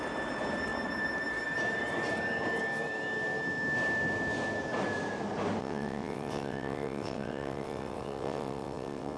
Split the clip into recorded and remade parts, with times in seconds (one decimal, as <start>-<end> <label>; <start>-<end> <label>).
0.0-5.6 recorded; 5.6-9.2 remade

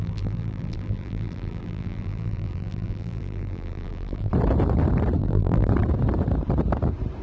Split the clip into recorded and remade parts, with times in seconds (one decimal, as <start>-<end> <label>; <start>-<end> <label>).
0.0-4.3 remade; 4.3-5.2 recorded; 5.2-5.7 remade; 5.7-7.2 recorded

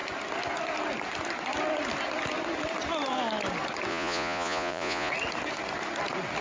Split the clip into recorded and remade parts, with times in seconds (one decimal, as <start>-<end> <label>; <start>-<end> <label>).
0.0-3.9 recorded; 3.9-5.1 remade; 5.1-6.4 recorded

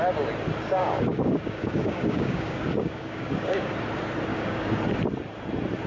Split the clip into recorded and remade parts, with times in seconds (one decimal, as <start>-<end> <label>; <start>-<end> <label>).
0.0-0.8 recorded; 0.8-3.7 remade; 3.7-4.3 recorded; 4.3-4.8 remade; 4.8-5.9 recorded

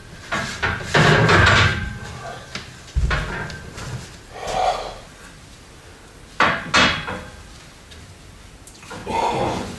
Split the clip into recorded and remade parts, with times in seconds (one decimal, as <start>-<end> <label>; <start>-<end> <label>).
0.0-9.0 recorded; 9.0-9.8 remade